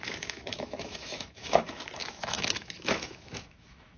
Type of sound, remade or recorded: remade